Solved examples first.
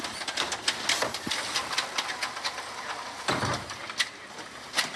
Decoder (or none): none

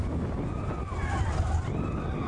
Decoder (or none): none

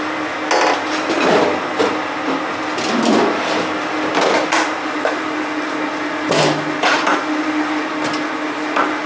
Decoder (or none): none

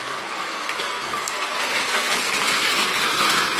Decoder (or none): codec, SNAC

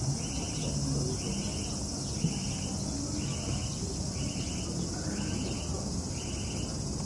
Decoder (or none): none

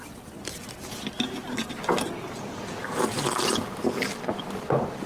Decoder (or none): none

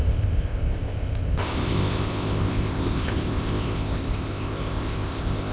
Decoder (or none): codec, ZipCodec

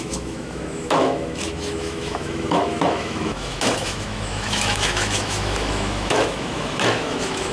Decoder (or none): autoencoder, DAC-VAE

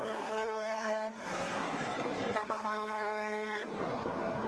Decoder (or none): codec, SNAC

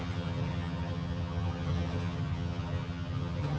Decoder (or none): vocoder, HiFi-GAN